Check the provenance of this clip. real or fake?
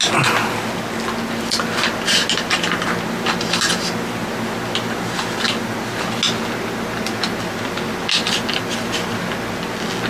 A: real